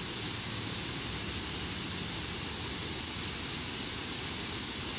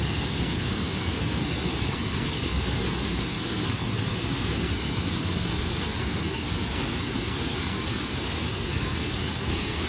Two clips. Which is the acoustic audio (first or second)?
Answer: first